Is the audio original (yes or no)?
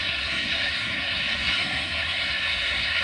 no